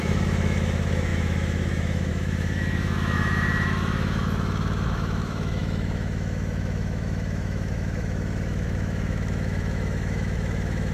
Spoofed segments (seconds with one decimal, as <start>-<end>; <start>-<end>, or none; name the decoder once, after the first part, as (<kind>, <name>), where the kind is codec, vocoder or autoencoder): 0.0-10.9 (autoencoder, DAC-VAE)